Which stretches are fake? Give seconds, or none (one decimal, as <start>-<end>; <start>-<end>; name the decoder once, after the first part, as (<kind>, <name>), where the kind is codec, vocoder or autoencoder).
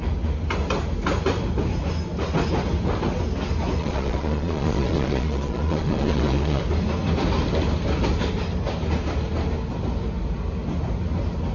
3.8-6.6 (vocoder, Vocos)